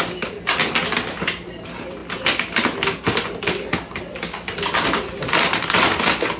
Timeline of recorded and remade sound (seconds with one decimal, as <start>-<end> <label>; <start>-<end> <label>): 0.0-6.4 recorded